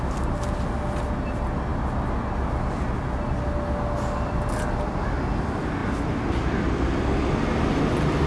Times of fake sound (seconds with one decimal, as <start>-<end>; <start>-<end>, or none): none